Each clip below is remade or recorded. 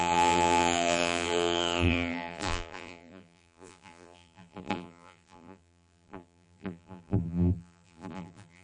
remade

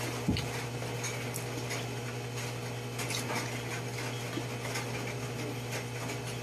recorded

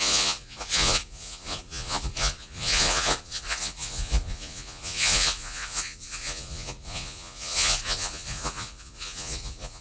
remade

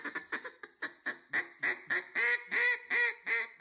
recorded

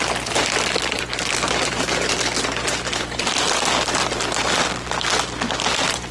recorded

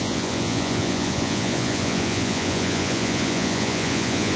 remade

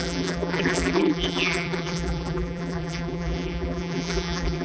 remade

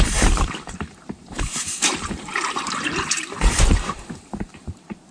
remade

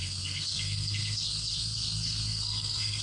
remade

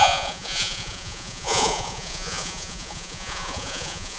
remade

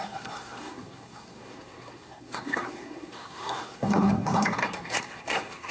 remade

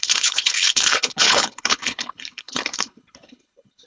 remade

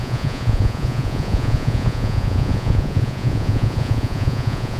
remade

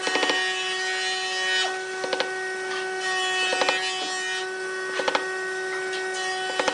recorded